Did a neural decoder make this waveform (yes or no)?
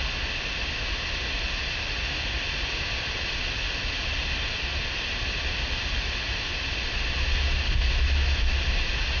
no